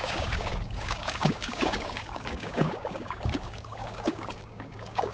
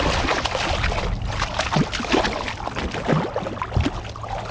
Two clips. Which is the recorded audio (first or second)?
second